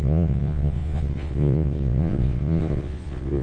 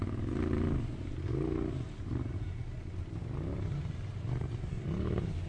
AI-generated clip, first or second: first